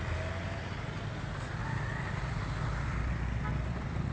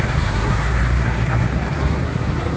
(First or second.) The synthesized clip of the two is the second